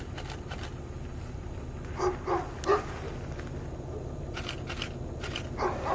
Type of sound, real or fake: real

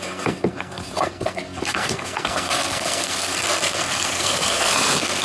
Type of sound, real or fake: fake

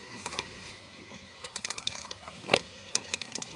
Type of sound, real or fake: fake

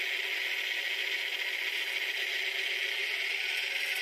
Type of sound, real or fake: real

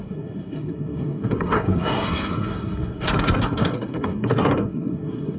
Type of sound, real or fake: fake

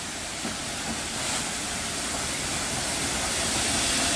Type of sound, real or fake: real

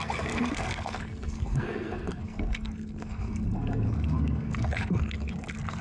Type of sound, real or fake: fake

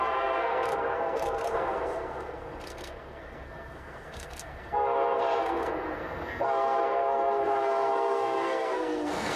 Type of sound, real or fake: fake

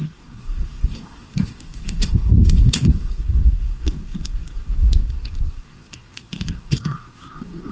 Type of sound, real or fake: fake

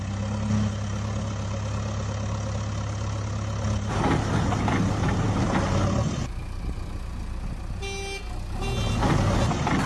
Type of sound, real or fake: real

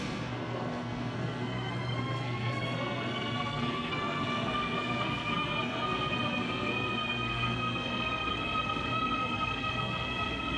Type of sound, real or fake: fake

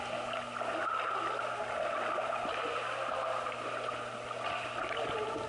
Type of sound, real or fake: real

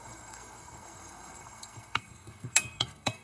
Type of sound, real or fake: fake